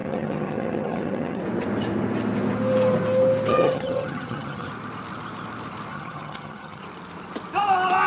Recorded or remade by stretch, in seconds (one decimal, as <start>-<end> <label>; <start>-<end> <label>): 0.0-1.4 remade; 1.4-3.5 recorded; 3.5-4.7 remade; 4.7-5.9 recorded; 5.9-6.8 remade; 6.8-8.1 recorded